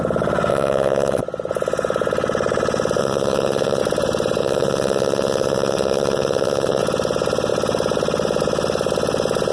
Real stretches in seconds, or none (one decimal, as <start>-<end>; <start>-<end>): 0.0-0.5; 1.2-3.0; 3.8-4.4; 6.8-9.5